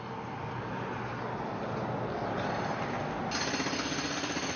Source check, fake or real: real